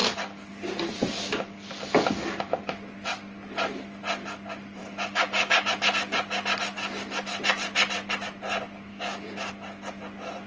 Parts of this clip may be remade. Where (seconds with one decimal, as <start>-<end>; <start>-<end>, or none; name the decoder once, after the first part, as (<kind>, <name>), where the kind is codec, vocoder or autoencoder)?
4.8-5.7 (codec, DAC); 8.9-9.5